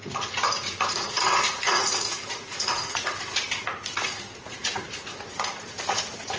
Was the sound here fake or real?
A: fake